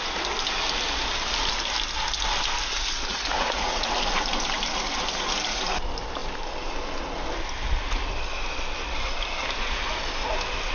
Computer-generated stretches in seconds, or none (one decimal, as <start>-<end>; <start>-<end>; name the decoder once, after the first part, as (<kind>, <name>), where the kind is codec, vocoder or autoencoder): 3.1-3.9 (vocoder, Vocos)